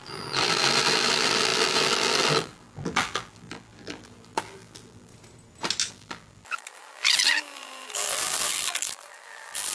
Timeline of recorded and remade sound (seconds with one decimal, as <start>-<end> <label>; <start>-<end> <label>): 0.0-5.1 remade; 5.1-5.9 recorded; 5.9-9.7 remade